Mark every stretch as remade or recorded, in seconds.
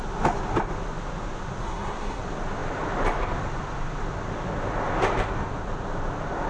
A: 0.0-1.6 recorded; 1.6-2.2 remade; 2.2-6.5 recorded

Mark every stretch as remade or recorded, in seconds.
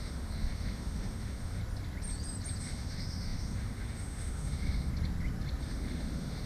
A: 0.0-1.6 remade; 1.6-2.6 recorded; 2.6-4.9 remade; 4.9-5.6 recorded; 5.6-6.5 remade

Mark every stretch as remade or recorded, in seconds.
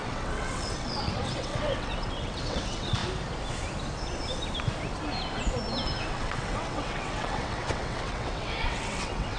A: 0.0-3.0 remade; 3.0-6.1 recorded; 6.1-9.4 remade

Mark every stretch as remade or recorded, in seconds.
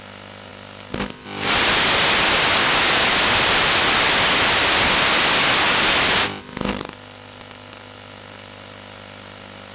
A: 0.0-9.7 recorded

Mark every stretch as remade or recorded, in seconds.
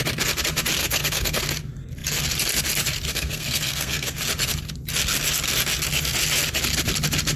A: 0.0-0.8 recorded; 0.8-1.4 remade; 1.4-3.1 recorded; 3.1-4.2 remade; 4.2-7.4 recorded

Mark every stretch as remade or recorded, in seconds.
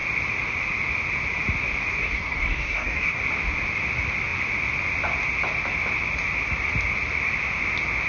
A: 0.0-1.9 recorded; 1.9-3.2 remade; 3.2-8.1 recorded